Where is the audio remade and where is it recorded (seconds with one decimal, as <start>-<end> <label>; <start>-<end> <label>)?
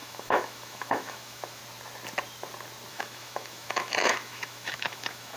0.0-1.6 remade; 1.6-2.9 recorded; 2.9-5.4 remade